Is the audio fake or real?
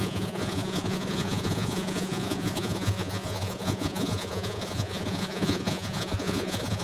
fake